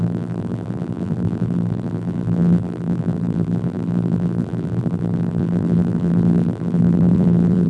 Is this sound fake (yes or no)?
yes